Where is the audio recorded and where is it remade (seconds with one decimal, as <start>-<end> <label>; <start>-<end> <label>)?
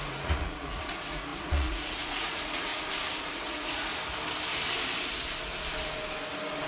0.0-2.7 remade; 2.7-3.2 recorded; 3.2-3.9 remade; 3.9-6.7 recorded